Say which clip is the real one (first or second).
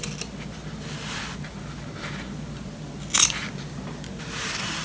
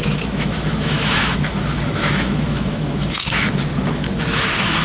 first